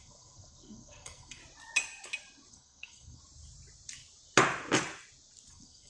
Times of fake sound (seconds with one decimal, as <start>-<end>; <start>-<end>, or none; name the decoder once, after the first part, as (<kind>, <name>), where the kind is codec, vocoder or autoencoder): 0.0-1.4 (codec, SNAC); 2.5-3.2; 5.5-5.9